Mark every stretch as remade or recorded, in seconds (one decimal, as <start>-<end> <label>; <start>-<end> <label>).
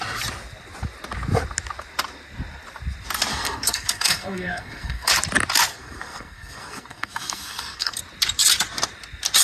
0.0-3.3 recorded; 3.3-5.1 remade; 5.1-5.7 recorded; 5.7-8.0 remade; 8.0-9.4 recorded